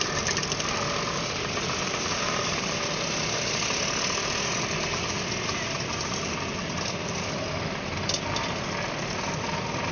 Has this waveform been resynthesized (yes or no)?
no